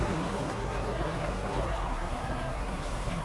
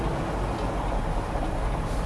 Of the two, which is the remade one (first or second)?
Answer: first